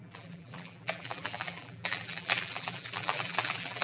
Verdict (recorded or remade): remade